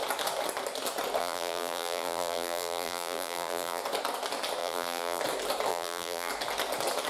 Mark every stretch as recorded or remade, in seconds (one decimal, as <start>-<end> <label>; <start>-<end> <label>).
0.0-1.2 recorded; 1.2-3.8 remade; 3.8-4.6 recorded; 4.6-5.2 remade; 5.2-5.7 recorded; 5.7-6.3 remade; 6.3-7.1 recorded